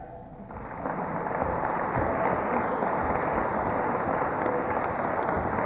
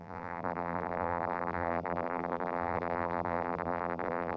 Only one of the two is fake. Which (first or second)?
second